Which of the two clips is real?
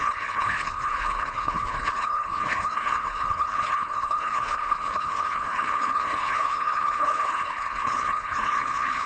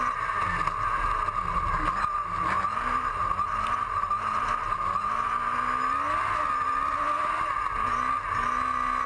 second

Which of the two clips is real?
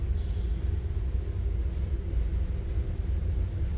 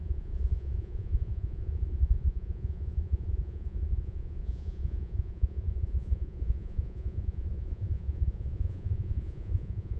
first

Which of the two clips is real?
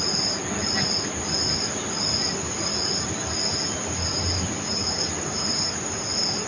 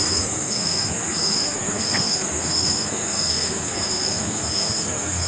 first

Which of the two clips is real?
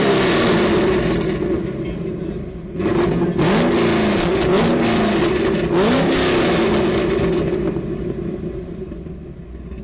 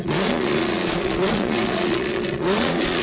first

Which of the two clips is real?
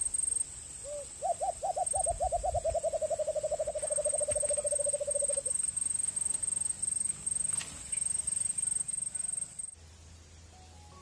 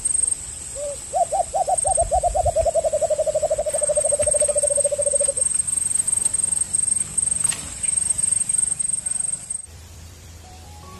first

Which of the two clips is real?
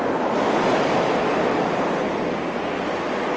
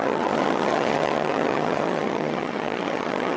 first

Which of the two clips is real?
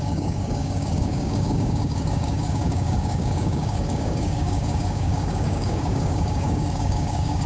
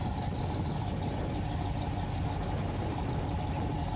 second